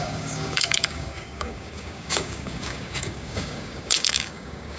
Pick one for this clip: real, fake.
fake